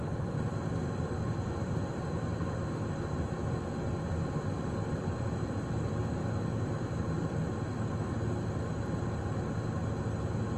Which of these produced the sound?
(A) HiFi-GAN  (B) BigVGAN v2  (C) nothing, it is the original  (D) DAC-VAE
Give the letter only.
C